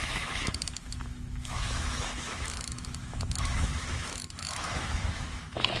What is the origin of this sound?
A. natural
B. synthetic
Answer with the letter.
B